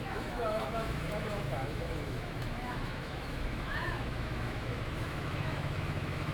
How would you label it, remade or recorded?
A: remade